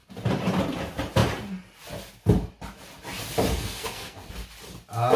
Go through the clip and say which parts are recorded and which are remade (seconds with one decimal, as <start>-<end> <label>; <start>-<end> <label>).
0.0-3.5 recorded; 3.5-4.3 remade; 4.3-5.2 recorded